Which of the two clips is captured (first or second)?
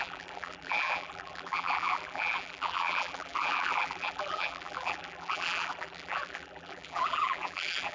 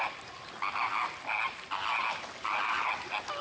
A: second